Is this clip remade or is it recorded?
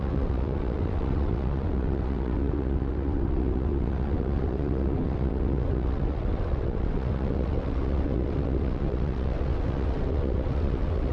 remade